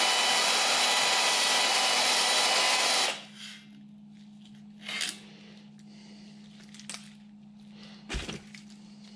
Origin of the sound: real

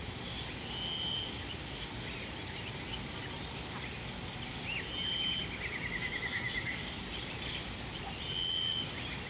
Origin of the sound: real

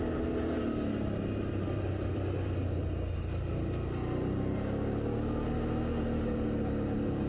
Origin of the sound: real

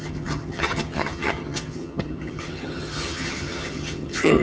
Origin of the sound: fake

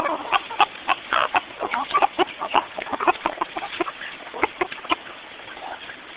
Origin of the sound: fake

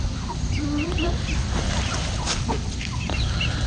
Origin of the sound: fake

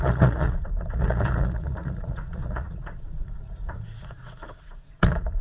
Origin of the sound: fake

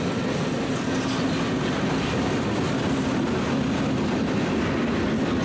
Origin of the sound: real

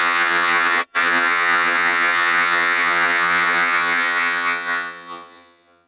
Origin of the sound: fake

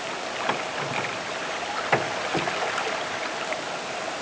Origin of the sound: real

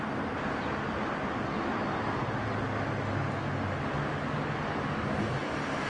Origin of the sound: real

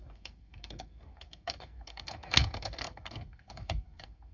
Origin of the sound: fake